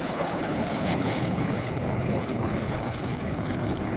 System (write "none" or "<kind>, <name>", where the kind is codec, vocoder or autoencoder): codec, HILCodec